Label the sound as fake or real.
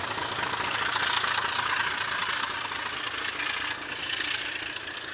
real